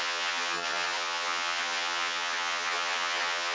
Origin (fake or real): fake